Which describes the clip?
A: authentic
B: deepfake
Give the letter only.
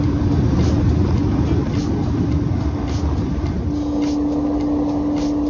A